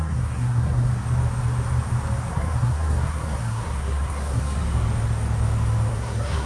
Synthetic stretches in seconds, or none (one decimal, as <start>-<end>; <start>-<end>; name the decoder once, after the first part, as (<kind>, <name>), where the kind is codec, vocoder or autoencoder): 0.0-0.9 (codec, SNAC); 2.3-4.6; 5.9-6.5